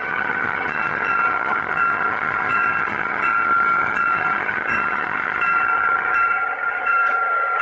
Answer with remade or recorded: remade